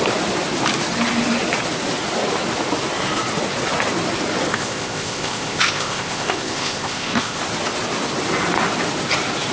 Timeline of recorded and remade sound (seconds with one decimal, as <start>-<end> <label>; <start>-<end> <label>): 0.0-4.5 recorded; 4.5-7.4 remade; 7.4-9.5 recorded